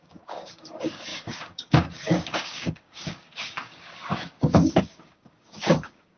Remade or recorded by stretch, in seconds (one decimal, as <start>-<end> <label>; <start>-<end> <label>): 0.0-6.2 remade